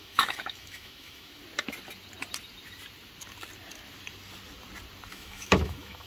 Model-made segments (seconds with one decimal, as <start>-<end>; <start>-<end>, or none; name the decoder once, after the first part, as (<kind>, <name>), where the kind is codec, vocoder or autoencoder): 0.0-1.4 (autoencoder, DAC-VAE); 5.1-6.1